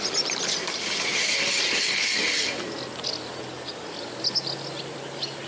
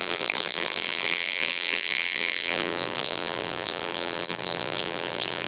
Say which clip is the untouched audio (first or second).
first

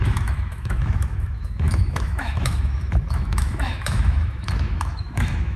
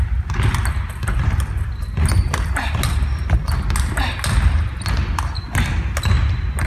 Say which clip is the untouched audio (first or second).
second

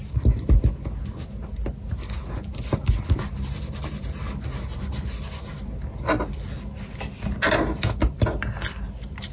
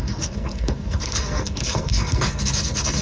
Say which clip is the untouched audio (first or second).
first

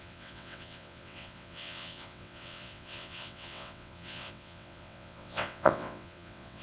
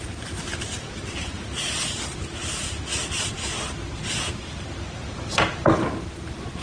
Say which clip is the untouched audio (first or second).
second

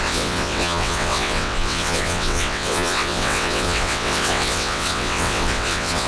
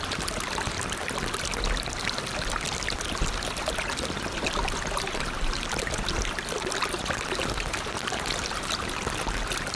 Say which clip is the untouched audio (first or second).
second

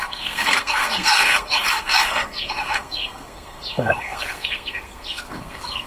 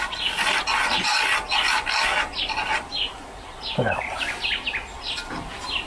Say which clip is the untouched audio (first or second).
second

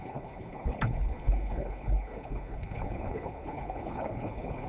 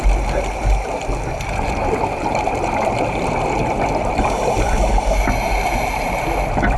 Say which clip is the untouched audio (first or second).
second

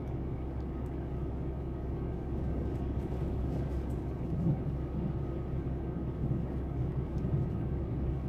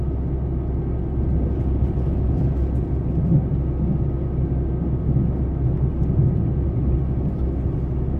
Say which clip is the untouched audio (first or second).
second